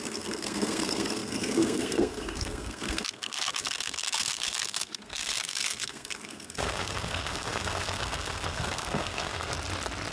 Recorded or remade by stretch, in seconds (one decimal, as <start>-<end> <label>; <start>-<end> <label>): 0.0-9.5 remade; 9.5-10.1 recorded